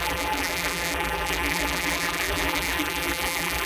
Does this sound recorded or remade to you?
remade